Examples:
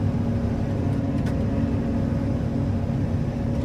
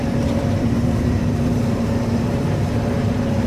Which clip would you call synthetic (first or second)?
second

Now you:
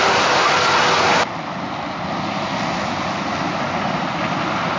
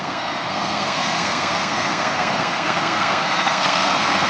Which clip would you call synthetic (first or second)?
second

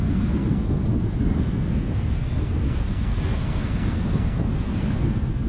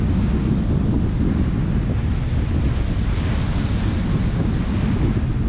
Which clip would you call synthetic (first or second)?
first